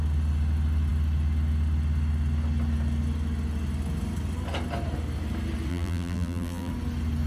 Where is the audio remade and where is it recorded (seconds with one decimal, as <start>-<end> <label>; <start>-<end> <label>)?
0.0-5.7 recorded; 5.7-6.7 remade; 6.7-7.3 recorded